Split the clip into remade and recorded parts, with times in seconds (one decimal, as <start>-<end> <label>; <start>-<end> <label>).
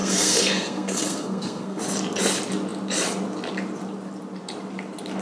0.0-1.8 remade; 1.8-5.2 recorded